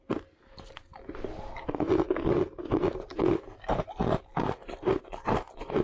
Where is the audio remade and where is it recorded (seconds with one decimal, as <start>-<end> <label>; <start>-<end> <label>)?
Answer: 0.0-5.8 recorded